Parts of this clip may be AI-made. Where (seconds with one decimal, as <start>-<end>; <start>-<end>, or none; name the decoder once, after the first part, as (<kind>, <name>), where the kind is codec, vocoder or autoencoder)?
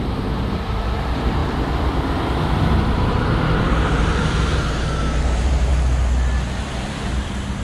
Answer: 0.0-1.4 (vocoder, BigVGAN v2); 2.5-5.7